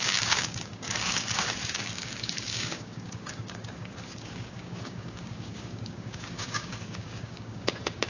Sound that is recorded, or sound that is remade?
remade